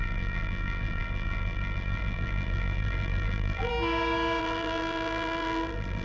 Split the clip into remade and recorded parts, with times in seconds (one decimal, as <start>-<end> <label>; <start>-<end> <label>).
0.0-3.7 remade; 3.7-4.4 recorded; 4.4-6.0 remade